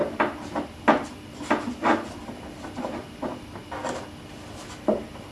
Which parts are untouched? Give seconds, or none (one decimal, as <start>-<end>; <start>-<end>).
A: 0.0-5.3

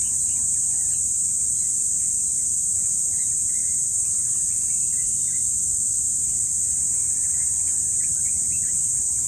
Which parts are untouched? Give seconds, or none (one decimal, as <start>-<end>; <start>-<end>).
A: 1.2-3.6; 4.4-9.3

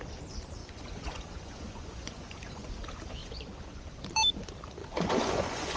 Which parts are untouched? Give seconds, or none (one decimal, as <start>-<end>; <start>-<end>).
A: 0.0-0.6; 2.7-3.2; 4.0-4.8

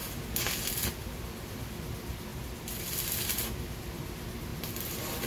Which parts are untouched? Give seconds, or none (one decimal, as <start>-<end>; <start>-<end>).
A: 0.0-0.7; 2.3-3.5

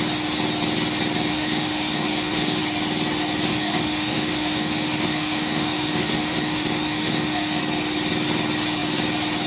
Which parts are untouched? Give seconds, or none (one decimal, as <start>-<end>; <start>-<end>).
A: 0.0-1.3; 2.6-3.5; 7.6-9.5

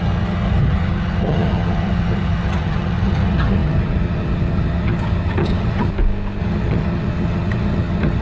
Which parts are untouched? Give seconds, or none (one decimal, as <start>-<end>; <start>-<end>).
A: 5.9-6.4

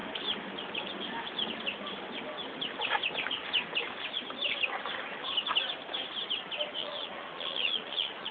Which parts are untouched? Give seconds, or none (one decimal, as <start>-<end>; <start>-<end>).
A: 0.0-6.8